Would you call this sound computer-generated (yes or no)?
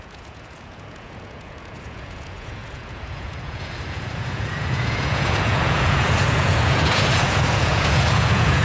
yes